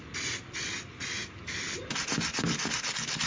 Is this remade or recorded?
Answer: recorded